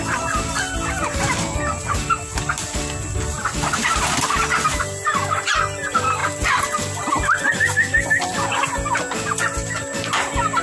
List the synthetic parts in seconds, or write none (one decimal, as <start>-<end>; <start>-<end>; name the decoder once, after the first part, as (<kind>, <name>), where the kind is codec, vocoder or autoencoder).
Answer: none